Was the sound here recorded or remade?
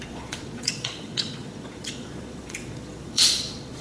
remade